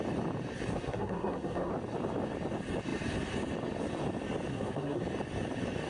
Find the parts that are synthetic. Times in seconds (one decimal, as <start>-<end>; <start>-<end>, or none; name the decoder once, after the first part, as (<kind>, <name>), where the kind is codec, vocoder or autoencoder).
0.7-1.7 (codec, SNAC); 4.5-5.0